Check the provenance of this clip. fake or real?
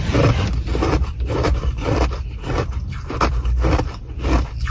fake